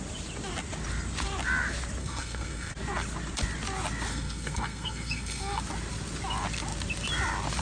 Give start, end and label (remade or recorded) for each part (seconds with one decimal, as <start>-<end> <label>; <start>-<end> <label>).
0.0-2.0 recorded; 2.0-2.7 remade; 2.7-4.1 recorded; 4.1-5.6 remade; 5.6-7.6 recorded